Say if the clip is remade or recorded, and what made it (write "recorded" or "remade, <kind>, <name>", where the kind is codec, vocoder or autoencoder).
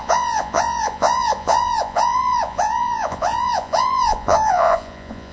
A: remade, vocoder, Vocos